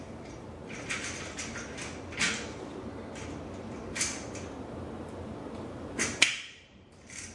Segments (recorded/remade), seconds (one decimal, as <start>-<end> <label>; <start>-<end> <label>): 0.0-0.6 remade; 0.6-4.0 recorded; 4.0-7.3 remade